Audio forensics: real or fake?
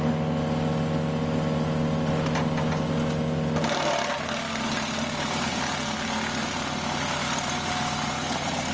real